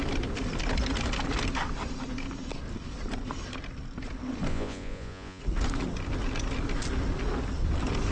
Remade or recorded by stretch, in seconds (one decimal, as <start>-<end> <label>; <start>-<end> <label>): 0.0-4.5 recorded; 4.5-5.4 remade; 5.4-8.1 recorded